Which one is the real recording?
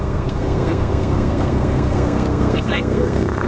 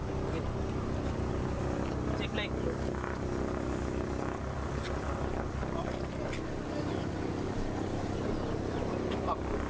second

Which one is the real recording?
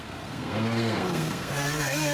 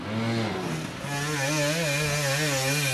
second